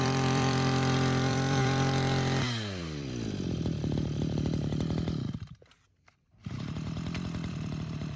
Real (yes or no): no